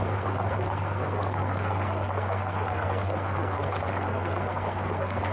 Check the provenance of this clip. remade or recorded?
remade